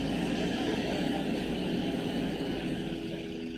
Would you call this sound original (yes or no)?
no